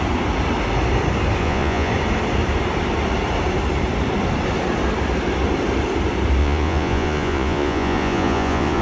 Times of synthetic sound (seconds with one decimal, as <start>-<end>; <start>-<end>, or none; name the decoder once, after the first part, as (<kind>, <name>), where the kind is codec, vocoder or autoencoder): 1.4-1.9 (vocoder, Vocos); 6.4-8.8